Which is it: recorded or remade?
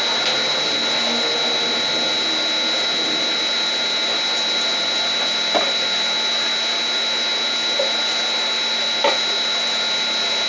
recorded